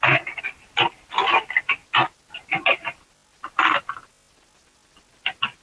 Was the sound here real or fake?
real